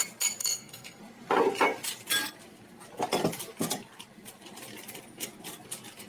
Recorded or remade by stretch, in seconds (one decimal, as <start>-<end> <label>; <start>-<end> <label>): 0.0-0.4 recorded; 0.4-1.0 remade; 1.0-6.1 recorded